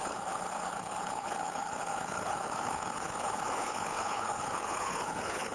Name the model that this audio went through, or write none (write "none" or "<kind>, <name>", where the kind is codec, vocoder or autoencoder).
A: codec, HILCodec